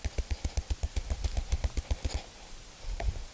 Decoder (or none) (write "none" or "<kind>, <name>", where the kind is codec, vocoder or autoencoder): none